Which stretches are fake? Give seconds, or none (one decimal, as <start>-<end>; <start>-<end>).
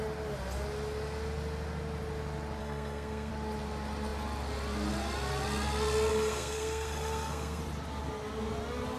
2.6-3.3; 6.1-7.6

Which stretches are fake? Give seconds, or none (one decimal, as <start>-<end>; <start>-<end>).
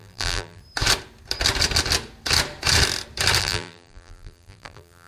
0.0-0.6; 3.4-5.1